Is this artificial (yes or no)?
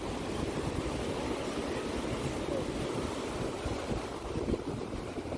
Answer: no